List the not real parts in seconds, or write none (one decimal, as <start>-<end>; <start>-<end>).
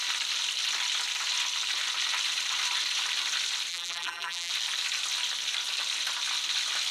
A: 3.7-4.5